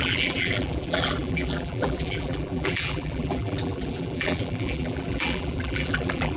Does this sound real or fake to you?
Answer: fake